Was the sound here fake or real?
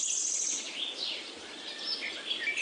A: real